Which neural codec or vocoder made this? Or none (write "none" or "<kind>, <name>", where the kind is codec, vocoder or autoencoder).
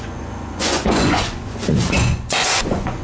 vocoder, Vocos